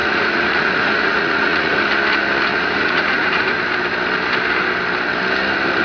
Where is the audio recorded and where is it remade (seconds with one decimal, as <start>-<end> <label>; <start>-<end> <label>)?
0.0-1.7 remade; 1.7-2.5 recorded; 2.5-3.5 remade; 3.5-5.8 recorded